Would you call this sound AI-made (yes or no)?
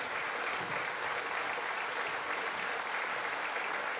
no